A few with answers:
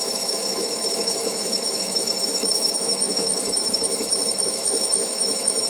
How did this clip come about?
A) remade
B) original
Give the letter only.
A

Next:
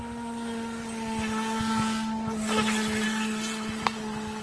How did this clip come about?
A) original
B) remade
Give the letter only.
A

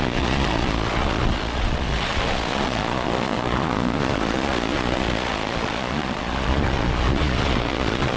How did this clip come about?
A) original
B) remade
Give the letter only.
B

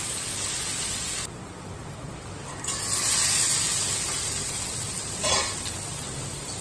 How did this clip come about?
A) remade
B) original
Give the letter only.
B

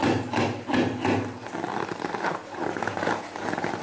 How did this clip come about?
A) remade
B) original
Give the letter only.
B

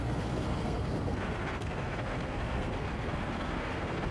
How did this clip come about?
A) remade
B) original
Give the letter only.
A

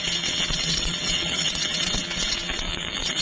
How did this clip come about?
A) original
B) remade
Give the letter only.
B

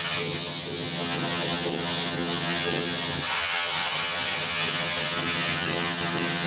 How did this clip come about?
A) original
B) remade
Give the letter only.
B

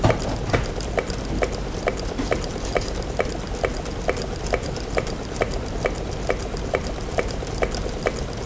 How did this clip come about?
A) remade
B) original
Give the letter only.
B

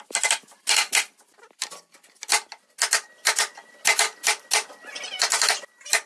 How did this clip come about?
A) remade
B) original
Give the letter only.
B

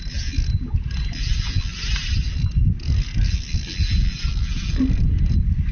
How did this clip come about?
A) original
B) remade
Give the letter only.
A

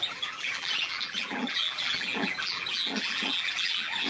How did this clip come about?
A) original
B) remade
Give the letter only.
B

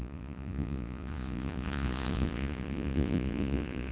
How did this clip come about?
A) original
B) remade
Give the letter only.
B